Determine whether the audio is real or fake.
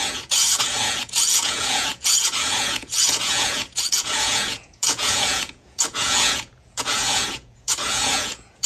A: fake